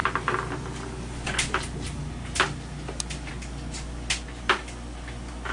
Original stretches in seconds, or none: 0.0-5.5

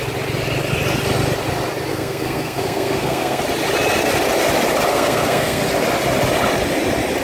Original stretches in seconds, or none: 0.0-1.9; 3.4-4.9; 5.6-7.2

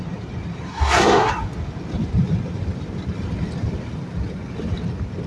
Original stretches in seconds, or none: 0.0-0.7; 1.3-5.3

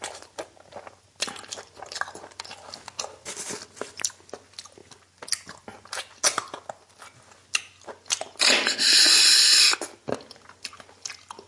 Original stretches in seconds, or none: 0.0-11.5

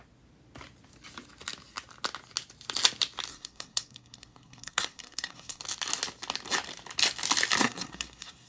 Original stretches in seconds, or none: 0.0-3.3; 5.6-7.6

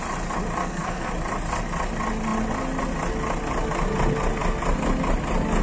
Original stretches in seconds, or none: 0.0-0.6; 1.1-5.6